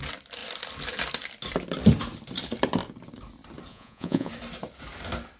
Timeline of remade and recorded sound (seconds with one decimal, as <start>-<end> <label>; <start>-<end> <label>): 0.0-3.7 recorded; 3.7-4.3 remade; 4.3-5.4 recorded